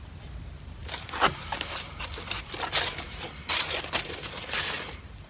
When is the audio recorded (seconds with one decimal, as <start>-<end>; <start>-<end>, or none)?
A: 0.0-5.3